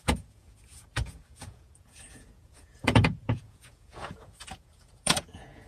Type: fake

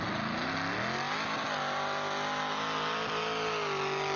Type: real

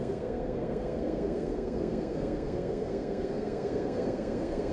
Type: fake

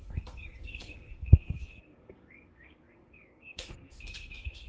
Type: fake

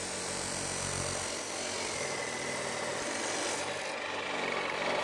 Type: real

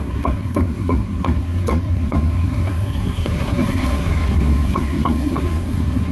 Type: fake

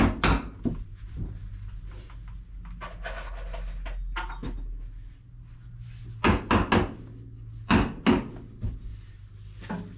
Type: real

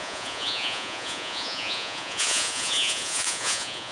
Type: fake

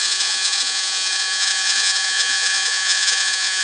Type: fake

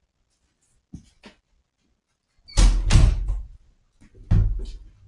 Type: real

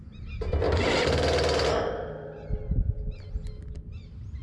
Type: real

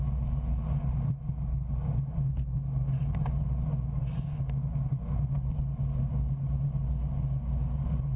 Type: real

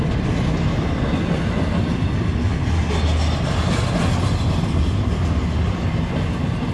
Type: real